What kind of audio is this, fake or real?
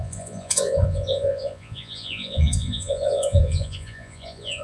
fake